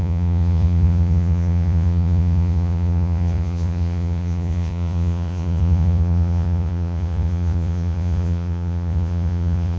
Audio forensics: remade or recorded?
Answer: remade